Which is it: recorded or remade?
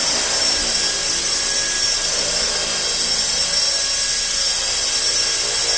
recorded